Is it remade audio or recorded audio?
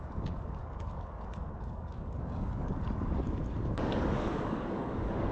remade